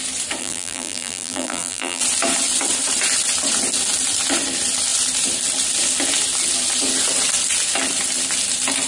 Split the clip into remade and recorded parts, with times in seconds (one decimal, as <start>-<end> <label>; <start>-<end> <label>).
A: 0.0-0.4 recorded; 0.4-2.0 remade; 2.0-8.9 recorded